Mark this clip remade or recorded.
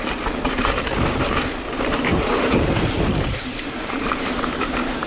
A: remade